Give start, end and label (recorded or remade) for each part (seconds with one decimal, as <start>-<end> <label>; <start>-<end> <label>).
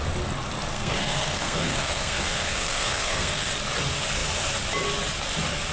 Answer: 0.0-0.7 recorded; 0.7-3.5 remade; 3.5-5.7 recorded